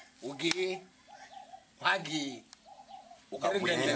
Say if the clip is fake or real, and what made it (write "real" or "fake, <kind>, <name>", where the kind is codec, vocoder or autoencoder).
real